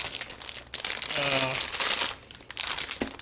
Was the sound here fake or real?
real